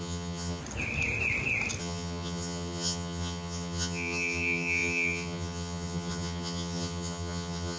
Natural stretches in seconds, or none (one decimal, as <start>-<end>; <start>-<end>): 0.6-1.8